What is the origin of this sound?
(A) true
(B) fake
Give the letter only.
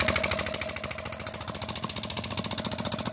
A